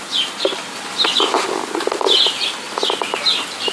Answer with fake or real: real